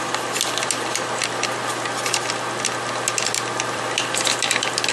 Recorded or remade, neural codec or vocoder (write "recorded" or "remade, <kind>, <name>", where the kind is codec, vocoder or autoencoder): recorded